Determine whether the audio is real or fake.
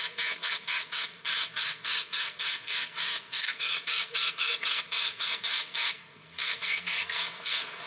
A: fake